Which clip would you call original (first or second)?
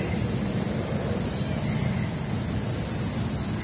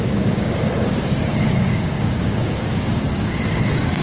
first